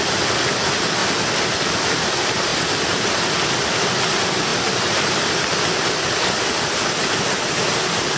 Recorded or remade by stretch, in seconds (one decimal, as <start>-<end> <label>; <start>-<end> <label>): 0.0-4.5 recorded; 4.5-5.4 remade; 5.4-8.2 recorded